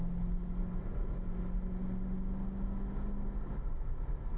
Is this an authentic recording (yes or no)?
yes